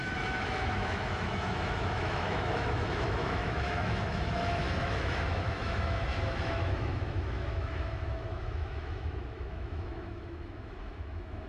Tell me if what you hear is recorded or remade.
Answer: remade